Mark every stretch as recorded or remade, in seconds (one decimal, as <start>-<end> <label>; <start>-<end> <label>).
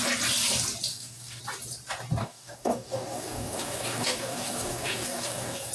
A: 0.0-0.9 recorded; 0.9-1.4 remade; 1.4-2.2 recorded; 2.2-5.7 remade